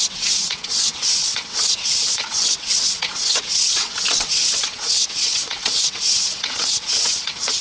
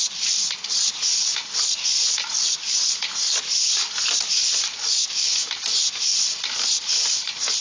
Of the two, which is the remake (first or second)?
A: first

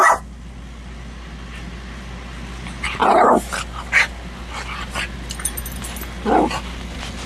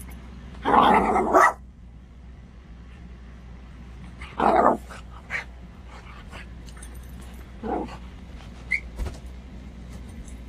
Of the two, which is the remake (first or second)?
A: second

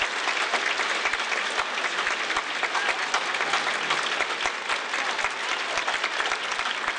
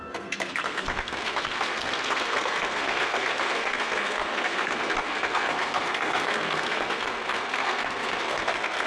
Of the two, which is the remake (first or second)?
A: second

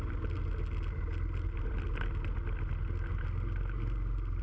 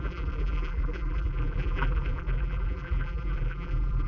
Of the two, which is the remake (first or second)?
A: second